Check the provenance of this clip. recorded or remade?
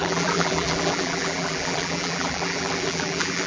remade